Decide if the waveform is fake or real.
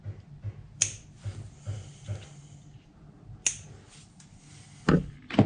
real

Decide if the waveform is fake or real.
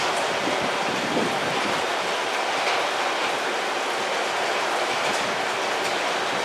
real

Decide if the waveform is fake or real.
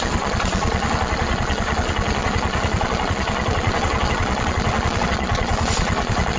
fake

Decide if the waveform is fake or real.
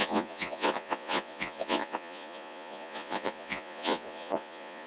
fake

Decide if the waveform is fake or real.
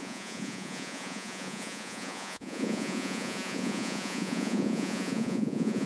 fake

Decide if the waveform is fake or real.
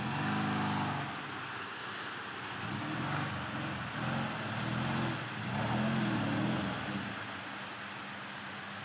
real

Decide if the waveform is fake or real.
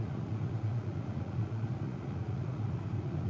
fake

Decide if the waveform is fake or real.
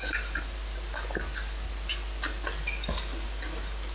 real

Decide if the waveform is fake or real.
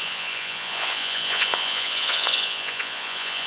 fake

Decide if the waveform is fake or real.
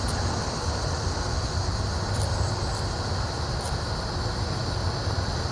real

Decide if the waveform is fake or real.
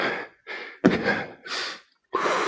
fake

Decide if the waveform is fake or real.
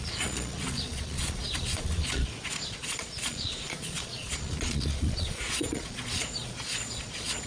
fake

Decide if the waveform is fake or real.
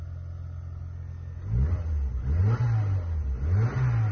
real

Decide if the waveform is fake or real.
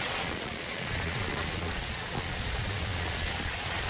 fake